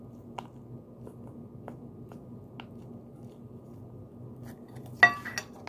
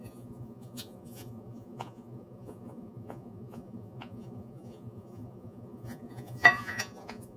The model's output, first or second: second